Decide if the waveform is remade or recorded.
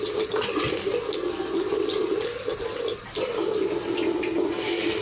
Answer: recorded